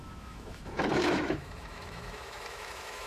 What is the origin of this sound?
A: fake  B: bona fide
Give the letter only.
A